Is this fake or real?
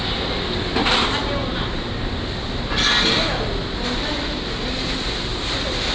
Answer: real